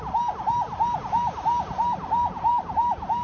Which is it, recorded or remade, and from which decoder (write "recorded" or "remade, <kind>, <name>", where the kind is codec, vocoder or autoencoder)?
recorded